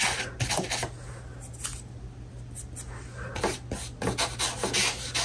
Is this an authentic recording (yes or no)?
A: yes